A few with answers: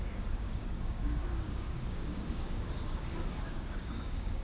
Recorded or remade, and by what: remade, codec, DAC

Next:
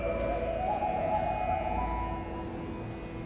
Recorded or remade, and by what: recorded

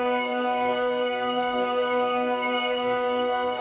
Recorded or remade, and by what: remade, codec, SNAC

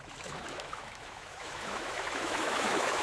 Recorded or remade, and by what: remade, autoencoder, DAC-VAE